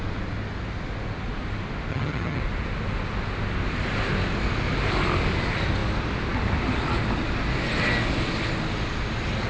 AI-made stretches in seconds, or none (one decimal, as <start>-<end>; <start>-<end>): 1.9-2.4